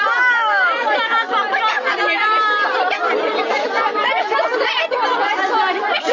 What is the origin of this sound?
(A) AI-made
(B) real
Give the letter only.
B